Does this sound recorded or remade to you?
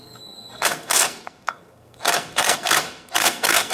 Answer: remade